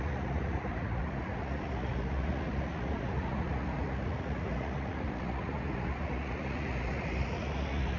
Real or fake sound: fake